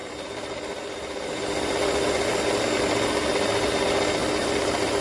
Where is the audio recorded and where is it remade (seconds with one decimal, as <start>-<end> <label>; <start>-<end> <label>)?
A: 0.0-2.8 remade; 2.8-4.2 recorded; 4.2-5.0 remade